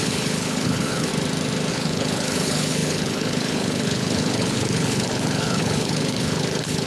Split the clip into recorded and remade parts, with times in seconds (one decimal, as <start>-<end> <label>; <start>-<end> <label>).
0.0-1.1 remade; 1.1-1.7 recorded; 1.7-6.9 remade